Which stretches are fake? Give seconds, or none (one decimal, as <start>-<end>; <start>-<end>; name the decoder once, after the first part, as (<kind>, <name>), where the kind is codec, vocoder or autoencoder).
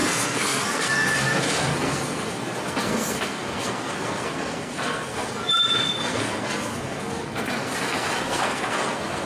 0.0-5.4 (codec, SNAC); 6.0-9.3